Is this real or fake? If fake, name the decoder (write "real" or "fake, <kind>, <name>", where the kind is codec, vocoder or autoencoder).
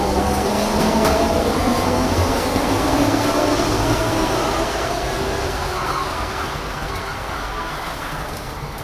fake, codec, SNAC